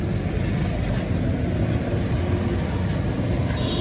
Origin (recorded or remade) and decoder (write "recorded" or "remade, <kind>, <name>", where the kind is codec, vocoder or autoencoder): recorded